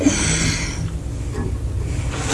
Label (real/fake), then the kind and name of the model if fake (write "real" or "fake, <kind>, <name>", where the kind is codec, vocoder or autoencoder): real